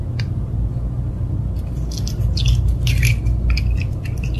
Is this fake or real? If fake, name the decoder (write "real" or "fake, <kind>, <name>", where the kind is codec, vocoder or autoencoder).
real